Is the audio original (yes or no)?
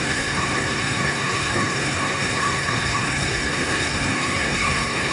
no